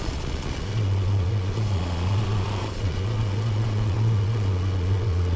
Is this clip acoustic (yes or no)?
no